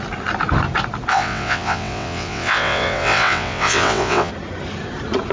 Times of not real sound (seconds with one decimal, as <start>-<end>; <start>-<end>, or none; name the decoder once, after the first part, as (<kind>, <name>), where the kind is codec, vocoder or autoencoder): 1.1-4.3 (vocoder, WaveNeXt)